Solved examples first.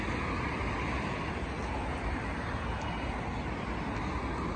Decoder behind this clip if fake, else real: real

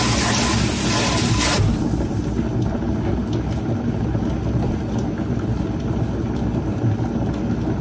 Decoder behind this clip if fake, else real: real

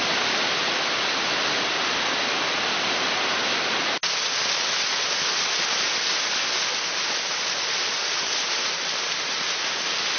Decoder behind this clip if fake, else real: real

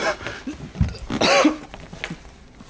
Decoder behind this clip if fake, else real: real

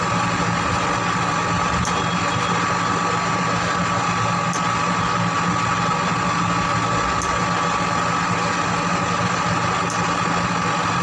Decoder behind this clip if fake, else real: real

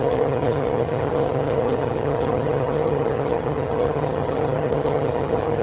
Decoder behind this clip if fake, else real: fake, vocoder, HiFi-GAN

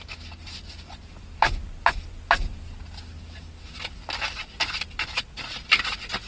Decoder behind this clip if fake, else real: real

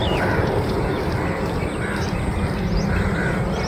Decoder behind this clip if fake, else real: real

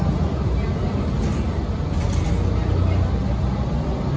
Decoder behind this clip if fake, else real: real